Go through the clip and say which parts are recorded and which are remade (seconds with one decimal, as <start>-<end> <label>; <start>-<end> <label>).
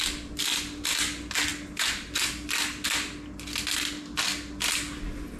0.0-5.4 recorded